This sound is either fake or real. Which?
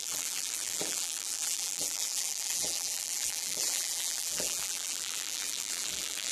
fake